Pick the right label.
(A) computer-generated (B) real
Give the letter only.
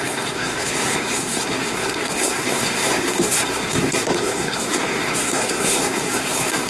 A